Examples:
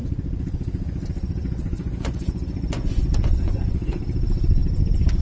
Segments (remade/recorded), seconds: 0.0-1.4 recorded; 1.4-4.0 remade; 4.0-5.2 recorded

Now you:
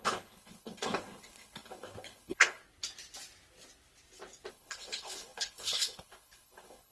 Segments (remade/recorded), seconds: 0.0-2.6 remade; 2.6-4.5 recorded; 4.5-6.9 remade